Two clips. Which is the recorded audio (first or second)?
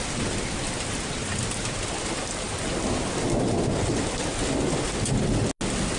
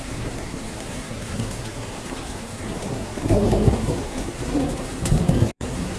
first